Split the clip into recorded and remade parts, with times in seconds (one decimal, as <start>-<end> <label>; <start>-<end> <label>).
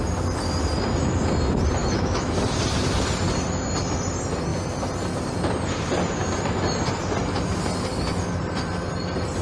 0.0-1.8 recorded; 1.8-2.3 remade; 2.3-9.4 recorded